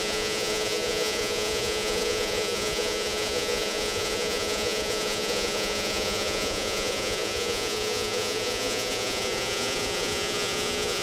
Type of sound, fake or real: fake